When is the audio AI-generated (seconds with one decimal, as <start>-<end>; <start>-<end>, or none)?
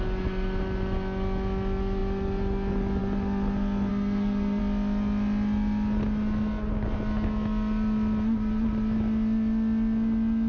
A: 3.9-4.6